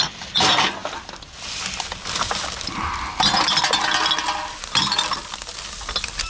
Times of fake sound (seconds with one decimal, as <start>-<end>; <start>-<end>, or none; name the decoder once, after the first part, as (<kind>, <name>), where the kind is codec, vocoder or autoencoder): none